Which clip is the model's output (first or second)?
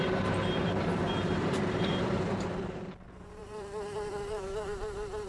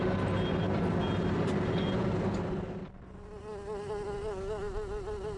first